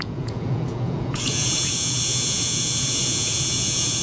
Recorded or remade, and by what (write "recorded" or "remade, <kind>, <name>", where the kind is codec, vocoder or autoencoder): remade, vocoder, Vocos